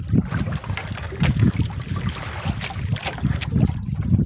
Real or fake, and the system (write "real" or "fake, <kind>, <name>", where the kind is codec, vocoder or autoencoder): real